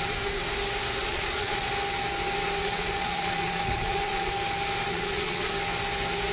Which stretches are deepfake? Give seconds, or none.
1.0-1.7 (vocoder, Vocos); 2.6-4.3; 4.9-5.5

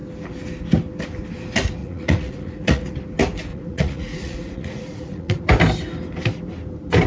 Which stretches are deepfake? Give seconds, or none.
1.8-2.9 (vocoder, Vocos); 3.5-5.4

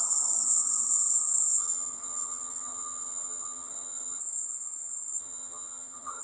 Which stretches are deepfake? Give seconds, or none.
1.6-4.2 (vocoder, HiFi-GAN); 5.2-6.2

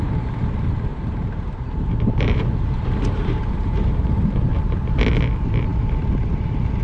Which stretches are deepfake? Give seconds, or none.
0.9-5.0 (vocoder, BigVGAN v2)

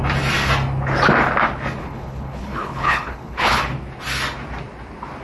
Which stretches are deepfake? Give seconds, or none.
1.8-3.6 (codec, HILCodec)